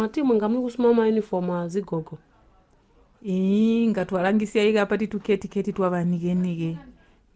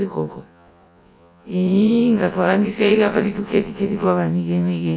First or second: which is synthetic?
second